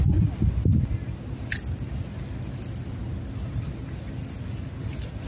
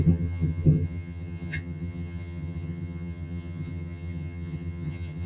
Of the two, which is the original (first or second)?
first